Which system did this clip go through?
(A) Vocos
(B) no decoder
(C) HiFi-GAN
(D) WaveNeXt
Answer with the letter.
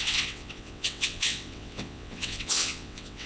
D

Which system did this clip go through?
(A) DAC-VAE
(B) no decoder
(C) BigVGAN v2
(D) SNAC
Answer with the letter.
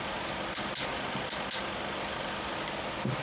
B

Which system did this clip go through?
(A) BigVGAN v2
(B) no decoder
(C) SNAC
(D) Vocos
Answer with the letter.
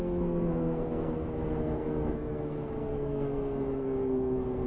C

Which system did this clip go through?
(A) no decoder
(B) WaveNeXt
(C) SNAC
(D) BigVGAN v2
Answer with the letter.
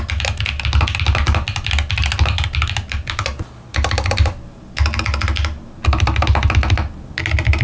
A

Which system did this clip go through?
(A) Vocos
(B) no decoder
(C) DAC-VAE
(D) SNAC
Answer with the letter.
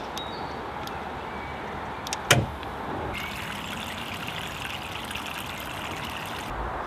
B